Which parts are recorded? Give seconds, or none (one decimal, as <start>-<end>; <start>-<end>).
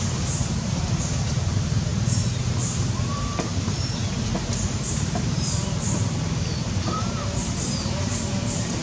1.9-2.4